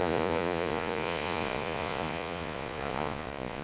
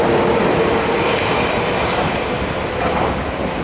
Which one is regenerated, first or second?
first